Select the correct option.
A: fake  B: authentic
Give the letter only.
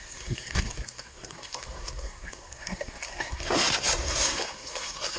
A